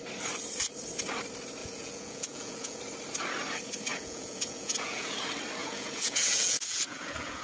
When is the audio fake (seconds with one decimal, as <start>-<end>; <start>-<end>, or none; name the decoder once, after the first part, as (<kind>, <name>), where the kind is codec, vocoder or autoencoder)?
1.6-2.8 (vocoder, Vocos); 3.9-5.1; 5.6-7.4